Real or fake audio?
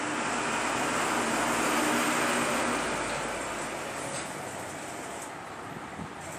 real